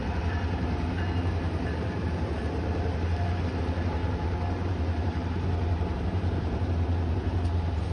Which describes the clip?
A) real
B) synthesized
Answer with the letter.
B